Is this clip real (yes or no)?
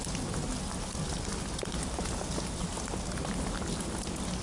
yes